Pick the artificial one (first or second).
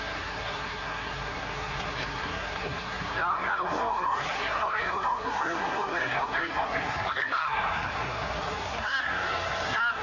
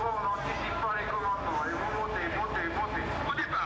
first